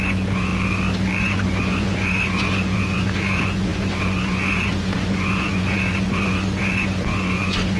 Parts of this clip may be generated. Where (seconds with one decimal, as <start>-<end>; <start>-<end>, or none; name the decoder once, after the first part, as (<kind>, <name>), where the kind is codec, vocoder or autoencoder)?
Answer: 0.0-0.5 (vocoder, Vocos); 1.2-7.8